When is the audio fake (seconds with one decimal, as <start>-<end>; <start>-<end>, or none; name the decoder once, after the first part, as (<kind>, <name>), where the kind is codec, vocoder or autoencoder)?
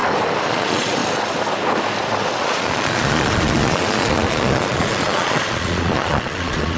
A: 0.5-1.0 (vocoder, Vocos); 2.4-6.8